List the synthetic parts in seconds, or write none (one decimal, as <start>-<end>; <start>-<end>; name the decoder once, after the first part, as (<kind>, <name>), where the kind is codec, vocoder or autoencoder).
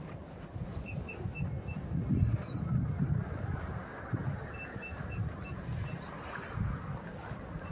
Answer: none